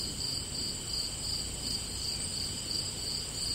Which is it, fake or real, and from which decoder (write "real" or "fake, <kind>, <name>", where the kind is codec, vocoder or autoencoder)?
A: real